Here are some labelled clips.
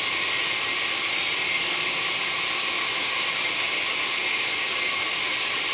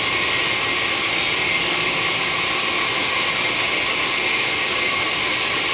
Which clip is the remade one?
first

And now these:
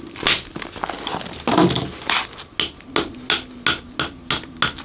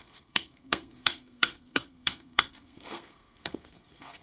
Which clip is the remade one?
second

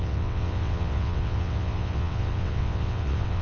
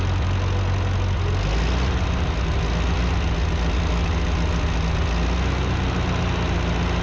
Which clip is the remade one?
first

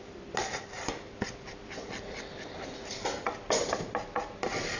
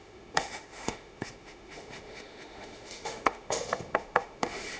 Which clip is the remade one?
second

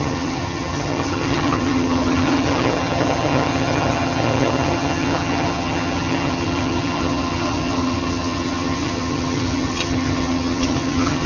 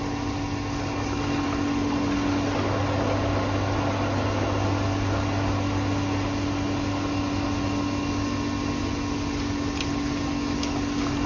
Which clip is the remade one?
first